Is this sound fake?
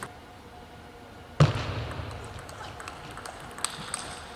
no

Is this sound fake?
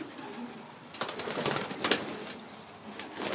no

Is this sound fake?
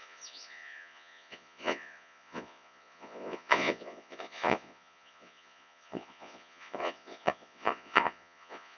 yes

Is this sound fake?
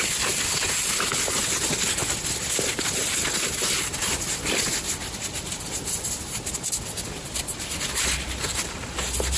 no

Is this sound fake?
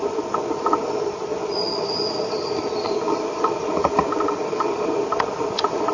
no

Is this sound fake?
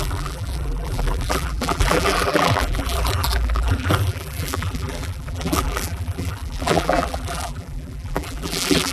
yes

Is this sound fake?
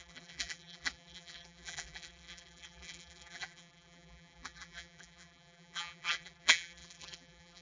yes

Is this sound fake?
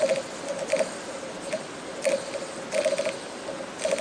no